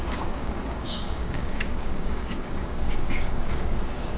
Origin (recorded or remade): remade